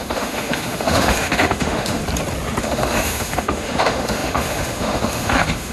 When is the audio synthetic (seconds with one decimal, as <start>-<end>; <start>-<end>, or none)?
0.0-2.0; 2.6-5.7